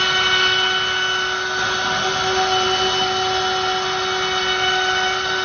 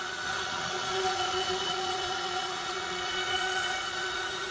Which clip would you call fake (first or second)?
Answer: second